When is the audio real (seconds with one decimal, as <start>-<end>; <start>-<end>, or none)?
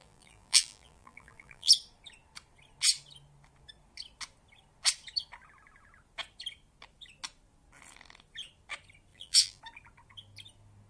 1.7-9.1; 9.6-10.9